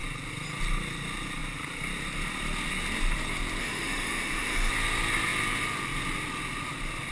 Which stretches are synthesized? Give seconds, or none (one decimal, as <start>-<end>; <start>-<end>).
3.6-4.7

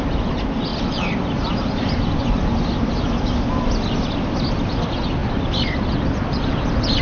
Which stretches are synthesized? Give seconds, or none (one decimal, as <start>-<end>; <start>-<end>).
0.7-2.0; 5.2-6.1

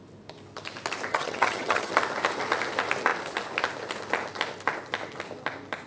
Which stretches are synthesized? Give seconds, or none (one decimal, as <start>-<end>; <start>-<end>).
1.1-1.9

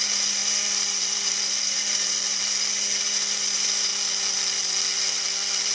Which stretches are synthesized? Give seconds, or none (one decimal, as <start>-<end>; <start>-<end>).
0.0-3.9; 4.6-5.7

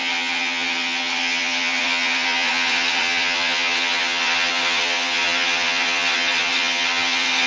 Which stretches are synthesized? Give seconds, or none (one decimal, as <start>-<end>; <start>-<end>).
0.0-7.5

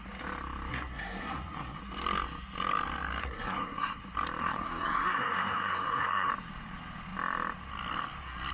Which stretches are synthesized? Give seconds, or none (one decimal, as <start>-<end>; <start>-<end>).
0.7-1.8; 3.2-4.0; 4.4-6.3

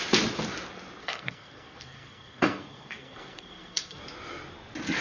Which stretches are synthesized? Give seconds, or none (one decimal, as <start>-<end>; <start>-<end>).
1.0-4.0

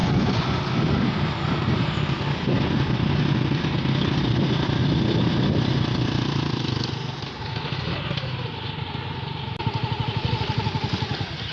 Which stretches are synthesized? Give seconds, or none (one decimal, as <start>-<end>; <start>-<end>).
0.0-0.6